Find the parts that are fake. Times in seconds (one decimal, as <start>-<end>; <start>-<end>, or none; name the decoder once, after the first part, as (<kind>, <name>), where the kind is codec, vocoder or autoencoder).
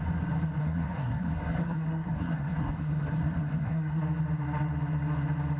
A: 0.6-4.0 (codec, SNAC)